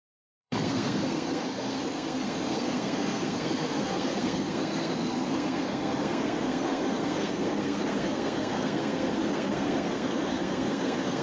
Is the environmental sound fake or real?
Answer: fake